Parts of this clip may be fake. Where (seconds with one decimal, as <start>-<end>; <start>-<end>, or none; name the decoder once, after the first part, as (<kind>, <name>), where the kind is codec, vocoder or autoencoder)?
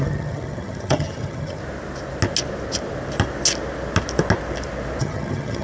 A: 0.0-1.6 (vocoder, HiFi-GAN); 5.0-5.6